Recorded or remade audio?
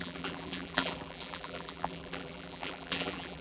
remade